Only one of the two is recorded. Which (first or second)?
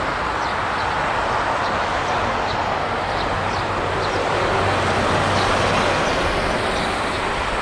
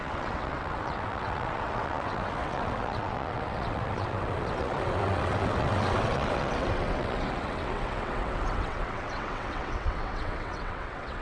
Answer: first